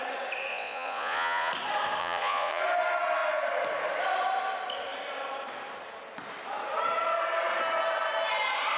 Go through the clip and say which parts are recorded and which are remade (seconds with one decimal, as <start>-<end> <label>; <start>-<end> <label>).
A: 0.0-0.5 recorded; 0.5-1.5 remade; 1.5-2.0 recorded; 2.0-2.6 remade; 2.6-8.8 recorded